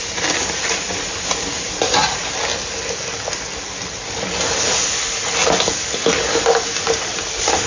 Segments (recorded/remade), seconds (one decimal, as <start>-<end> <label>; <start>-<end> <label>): 0.0-7.7 recorded

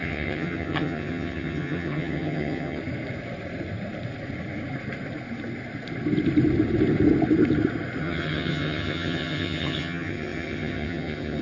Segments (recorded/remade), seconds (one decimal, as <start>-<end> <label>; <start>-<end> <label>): 0.0-2.8 remade; 2.8-8.0 recorded; 8.0-11.4 remade

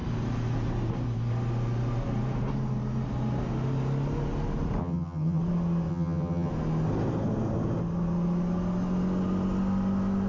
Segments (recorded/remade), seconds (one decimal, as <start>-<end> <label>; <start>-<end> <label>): 0.0-4.8 recorded; 4.8-5.4 remade; 5.4-5.9 recorded; 5.9-6.5 remade; 6.5-10.3 recorded

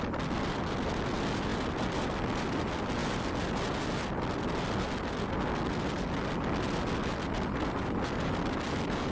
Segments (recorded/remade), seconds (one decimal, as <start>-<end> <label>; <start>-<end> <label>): 0.0-9.1 recorded